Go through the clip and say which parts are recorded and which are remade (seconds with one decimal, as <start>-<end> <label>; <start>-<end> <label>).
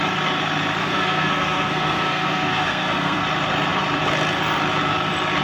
0.0-0.8 recorded; 0.8-3.2 remade; 3.2-5.4 recorded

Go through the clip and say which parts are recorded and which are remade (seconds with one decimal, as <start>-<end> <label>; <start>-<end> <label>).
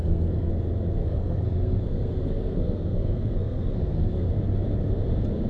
0.0-0.5 remade; 0.5-1.0 recorded; 1.0-4.3 remade; 4.3-5.5 recorded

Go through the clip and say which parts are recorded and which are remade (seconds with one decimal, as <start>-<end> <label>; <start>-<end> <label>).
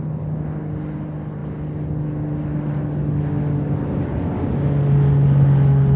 0.0-6.0 recorded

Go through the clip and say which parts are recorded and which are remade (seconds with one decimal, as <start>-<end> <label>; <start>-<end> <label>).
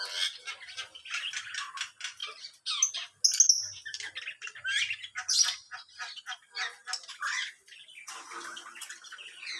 0.0-9.6 recorded